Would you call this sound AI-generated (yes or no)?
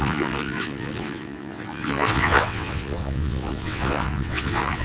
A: yes